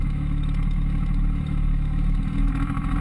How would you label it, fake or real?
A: fake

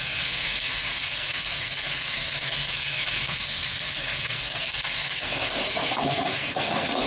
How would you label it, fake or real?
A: fake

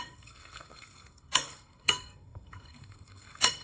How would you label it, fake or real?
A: fake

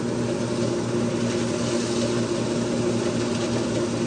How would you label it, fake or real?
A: real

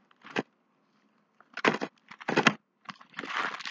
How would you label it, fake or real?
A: real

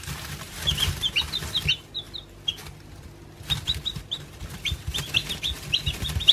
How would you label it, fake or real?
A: real